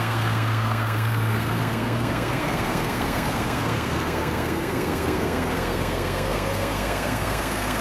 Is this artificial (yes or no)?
yes